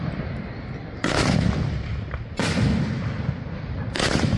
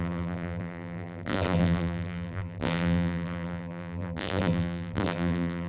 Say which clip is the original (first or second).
first